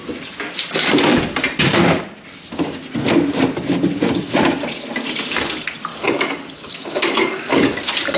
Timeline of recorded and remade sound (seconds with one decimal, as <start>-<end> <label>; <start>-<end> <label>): 0.0-5.9 recorded; 5.9-7.6 remade; 7.6-8.2 recorded

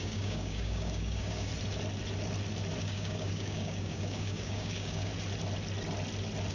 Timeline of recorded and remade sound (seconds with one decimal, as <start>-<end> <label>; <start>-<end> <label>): 0.0-1.5 remade; 1.5-2.8 recorded; 2.8-5.1 remade; 5.1-6.5 recorded

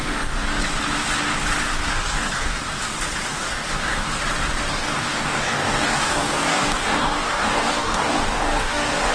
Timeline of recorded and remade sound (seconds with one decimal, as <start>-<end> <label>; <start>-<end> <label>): 0.0-0.6 remade; 0.6-1.9 recorded; 1.9-2.7 remade; 2.7-3.3 recorded; 3.3-4.2 remade; 4.2-4.7 recorded; 4.7-9.1 remade

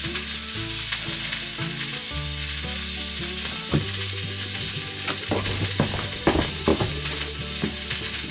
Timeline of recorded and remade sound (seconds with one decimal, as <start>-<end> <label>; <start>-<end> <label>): 0.0-8.3 recorded

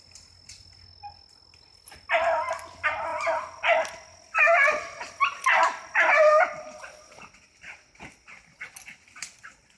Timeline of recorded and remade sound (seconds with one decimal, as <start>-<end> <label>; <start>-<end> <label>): 0.0-9.8 recorded

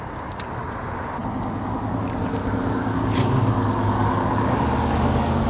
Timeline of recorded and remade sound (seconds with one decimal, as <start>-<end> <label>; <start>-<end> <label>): 0.0-2.4 recorded; 2.4-5.5 remade